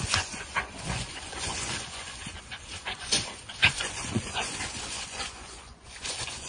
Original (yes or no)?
no